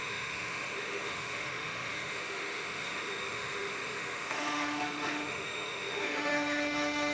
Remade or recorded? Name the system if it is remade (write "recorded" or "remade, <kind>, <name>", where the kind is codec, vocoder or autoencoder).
remade, autoencoder, DAC-VAE